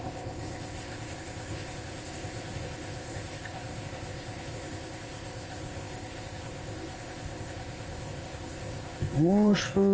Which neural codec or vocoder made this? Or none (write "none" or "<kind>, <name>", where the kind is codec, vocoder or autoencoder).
codec, ZipCodec